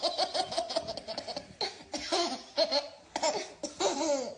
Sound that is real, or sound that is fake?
real